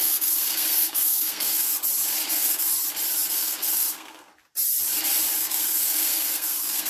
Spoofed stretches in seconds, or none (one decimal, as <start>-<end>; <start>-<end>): 0.0-1.7; 2.3-2.7; 3.3-4.3; 5.4-6.9